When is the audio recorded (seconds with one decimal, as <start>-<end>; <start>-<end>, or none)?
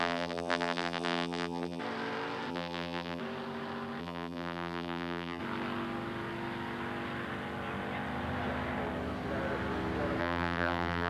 1.8-2.5; 3.2-4.0; 5.4-10.2